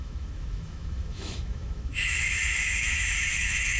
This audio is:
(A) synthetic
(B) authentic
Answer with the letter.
A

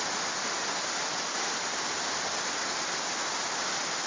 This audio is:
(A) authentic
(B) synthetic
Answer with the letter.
A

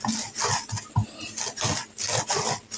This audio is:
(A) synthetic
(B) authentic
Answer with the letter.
B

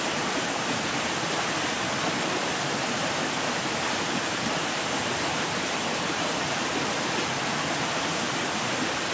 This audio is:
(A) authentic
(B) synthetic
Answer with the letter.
A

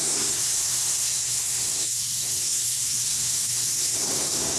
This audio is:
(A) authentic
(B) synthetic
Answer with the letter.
B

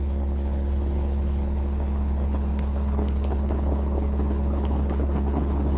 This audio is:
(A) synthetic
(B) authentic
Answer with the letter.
A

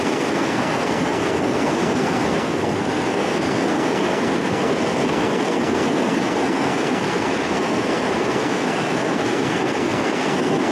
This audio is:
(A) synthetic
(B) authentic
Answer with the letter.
A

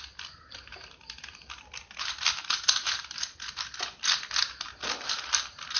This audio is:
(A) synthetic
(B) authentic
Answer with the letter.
B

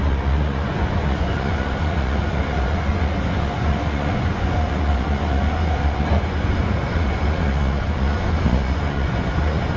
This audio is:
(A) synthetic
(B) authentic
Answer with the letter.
A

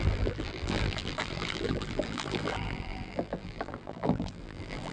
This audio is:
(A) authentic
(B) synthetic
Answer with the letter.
B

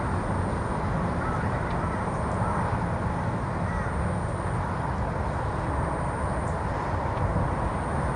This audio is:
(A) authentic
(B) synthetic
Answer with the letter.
A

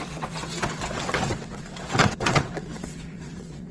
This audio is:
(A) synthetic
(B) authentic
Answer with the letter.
A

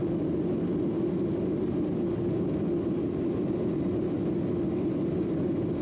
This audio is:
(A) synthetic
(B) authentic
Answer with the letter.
B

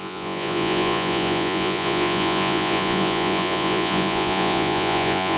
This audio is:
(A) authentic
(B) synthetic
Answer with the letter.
B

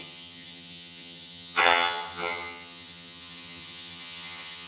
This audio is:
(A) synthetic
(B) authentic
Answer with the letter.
A